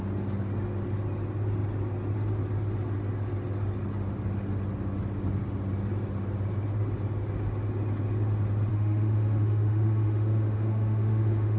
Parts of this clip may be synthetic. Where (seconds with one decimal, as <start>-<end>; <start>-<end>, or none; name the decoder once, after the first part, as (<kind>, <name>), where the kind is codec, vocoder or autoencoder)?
8.7-11.6 (autoencoder, DAC-VAE)